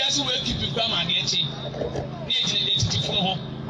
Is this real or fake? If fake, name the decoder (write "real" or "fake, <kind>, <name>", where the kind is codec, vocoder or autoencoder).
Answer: real